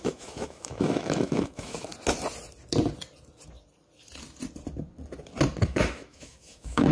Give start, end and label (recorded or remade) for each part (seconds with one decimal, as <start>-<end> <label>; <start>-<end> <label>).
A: 0.0-1.9 remade; 1.9-5.6 recorded; 5.6-6.9 remade